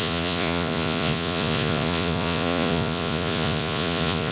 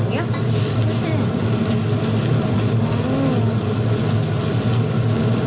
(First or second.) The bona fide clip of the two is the second